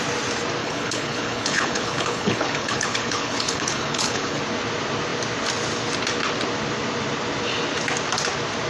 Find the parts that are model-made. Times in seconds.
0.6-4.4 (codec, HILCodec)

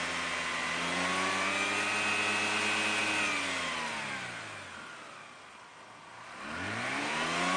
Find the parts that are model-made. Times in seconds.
none

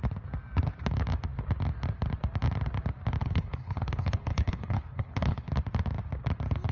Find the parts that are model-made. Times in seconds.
3.2-5.5 (codec, HILCodec)

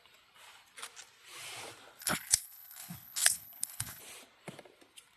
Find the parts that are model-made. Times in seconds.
2.0-4.0 (codec, HILCodec)